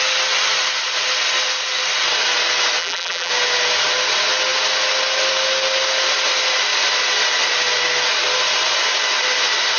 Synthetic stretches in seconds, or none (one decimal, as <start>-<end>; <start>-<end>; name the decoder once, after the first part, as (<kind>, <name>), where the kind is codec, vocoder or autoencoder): 2.8-3.3 (vocoder, BigVGAN v2)